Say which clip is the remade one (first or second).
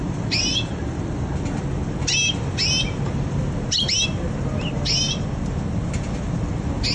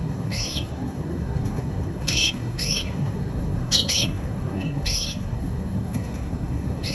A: second